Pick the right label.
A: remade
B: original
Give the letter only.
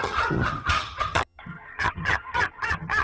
A